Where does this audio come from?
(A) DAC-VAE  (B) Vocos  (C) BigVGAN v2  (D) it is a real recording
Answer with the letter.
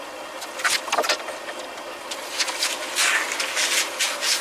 D